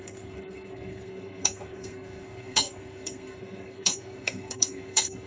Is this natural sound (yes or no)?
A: no